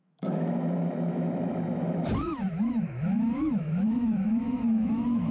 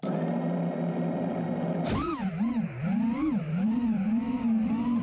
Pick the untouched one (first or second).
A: second